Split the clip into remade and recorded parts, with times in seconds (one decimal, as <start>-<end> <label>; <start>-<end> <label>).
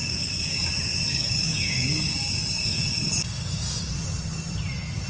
0.0-0.7 remade; 0.7-1.1 recorded; 1.1-3.9 remade; 3.9-5.1 recorded